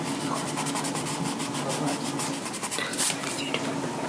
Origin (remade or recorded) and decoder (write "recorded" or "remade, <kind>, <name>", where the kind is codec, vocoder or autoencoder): recorded